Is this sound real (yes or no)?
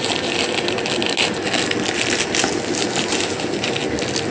yes